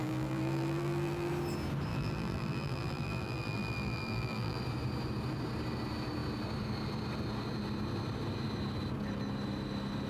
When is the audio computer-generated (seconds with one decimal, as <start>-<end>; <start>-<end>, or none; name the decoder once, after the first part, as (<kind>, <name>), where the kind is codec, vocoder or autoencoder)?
0.0-1.3 (vocoder, BigVGAN v2); 1.9-4.6